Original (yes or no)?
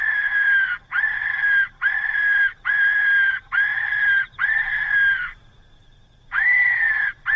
yes